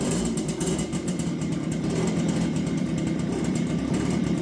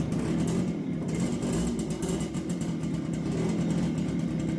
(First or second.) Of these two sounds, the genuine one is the second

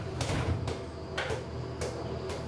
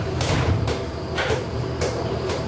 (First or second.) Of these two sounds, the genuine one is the first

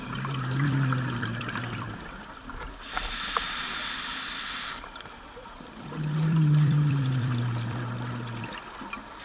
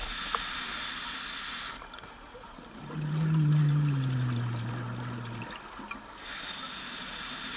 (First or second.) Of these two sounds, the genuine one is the second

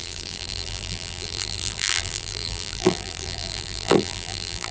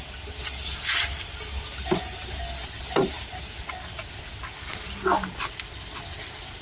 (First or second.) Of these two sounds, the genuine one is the second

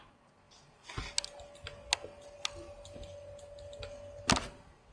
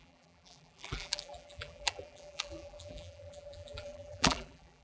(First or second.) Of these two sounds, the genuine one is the first